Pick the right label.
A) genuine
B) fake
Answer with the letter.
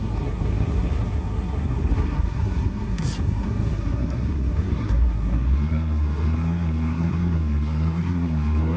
B